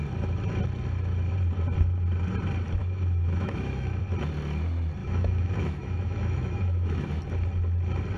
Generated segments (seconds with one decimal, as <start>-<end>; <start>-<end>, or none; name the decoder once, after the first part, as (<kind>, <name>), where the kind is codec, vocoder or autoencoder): 2.8-4.0 (autoencoder, DAC-VAE); 5.0-7.1